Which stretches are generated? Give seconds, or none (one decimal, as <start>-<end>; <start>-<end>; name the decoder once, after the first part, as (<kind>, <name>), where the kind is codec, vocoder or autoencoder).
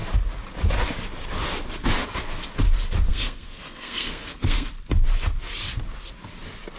3.1-4.7 (codec, SNAC)